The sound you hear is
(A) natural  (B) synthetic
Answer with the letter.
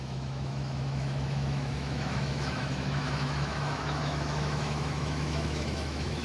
B